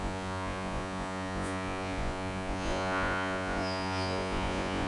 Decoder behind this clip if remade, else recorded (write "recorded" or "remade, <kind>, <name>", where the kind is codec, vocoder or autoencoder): remade, vocoder, Vocos